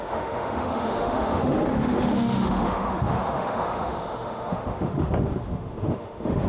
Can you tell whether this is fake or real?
fake